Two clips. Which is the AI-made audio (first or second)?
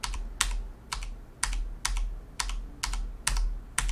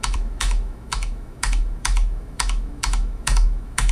second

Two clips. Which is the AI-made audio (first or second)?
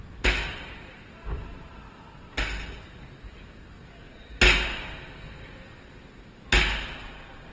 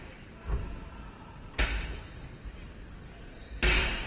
second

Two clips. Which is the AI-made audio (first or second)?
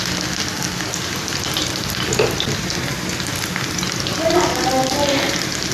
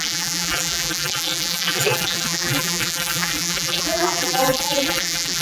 second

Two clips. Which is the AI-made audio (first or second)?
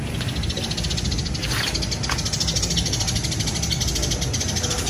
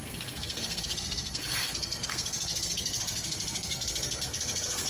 second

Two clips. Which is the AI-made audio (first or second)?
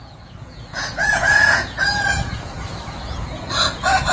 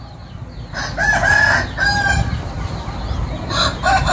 first